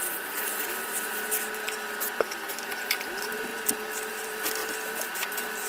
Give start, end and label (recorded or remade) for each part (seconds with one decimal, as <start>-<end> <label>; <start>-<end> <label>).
0.0-0.5 remade; 0.5-2.8 recorded; 2.8-3.5 remade; 3.5-4.1 recorded; 4.1-4.6 remade; 4.6-5.7 recorded